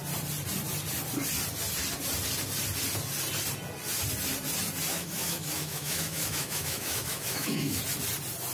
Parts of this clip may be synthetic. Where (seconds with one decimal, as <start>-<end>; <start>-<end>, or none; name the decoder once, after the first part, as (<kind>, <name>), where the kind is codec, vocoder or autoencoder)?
4.9-7.8 (autoencoder, DAC-VAE)